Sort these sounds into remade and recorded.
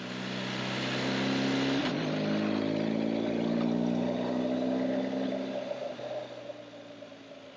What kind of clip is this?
recorded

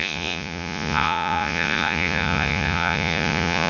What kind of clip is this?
remade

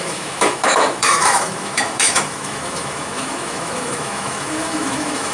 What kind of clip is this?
remade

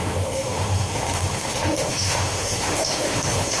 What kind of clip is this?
remade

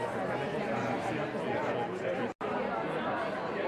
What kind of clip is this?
recorded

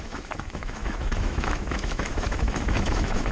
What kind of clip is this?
remade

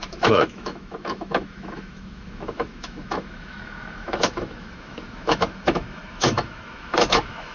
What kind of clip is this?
remade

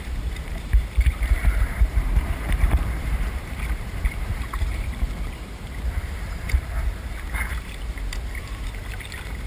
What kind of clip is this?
remade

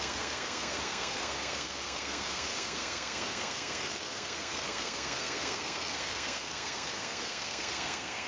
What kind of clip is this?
remade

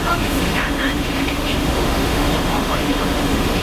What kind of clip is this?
remade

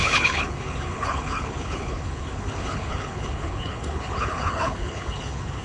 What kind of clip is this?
remade